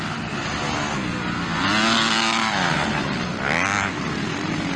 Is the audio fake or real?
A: real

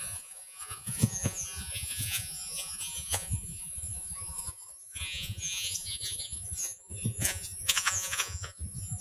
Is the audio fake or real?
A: fake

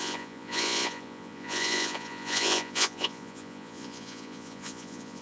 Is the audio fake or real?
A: fake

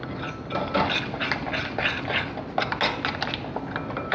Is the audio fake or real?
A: real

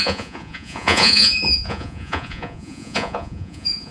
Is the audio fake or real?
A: fake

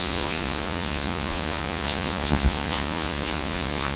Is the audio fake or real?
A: fake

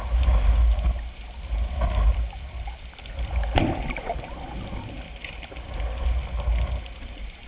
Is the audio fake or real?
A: real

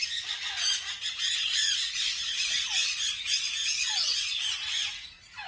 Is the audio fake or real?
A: fake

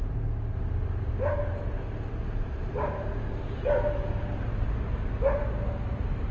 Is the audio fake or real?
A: real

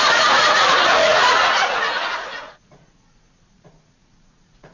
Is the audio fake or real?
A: fake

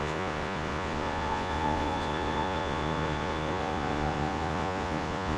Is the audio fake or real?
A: fake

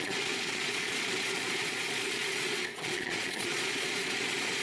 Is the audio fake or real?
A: fake